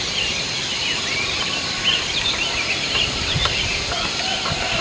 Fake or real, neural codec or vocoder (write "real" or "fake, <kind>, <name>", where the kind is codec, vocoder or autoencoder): fake, vocoder, BigVGAN v2